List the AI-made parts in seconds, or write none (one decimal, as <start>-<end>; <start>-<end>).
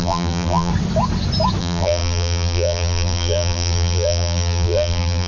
0.0-0.7; 1.6-5.3